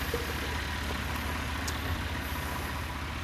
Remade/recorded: recorded